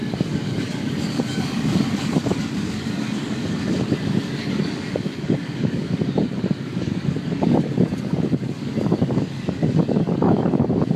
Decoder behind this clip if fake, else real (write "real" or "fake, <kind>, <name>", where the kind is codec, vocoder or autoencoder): fake, codec, DAC